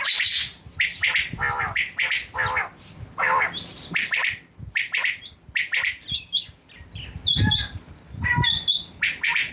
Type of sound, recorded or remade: recorded